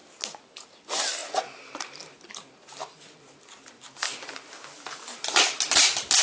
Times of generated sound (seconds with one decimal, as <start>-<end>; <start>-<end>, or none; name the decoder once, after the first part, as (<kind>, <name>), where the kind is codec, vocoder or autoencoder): none